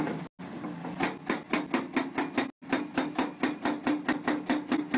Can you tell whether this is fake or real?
real